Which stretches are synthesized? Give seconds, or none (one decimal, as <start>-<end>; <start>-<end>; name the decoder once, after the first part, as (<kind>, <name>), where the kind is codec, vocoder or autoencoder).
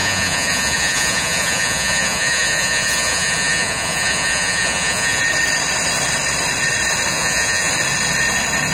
0.0-5.2 (vocoder, Vocos); 7.1-7.7